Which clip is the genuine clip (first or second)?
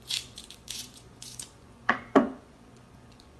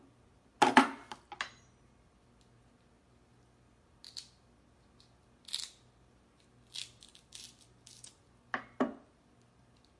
second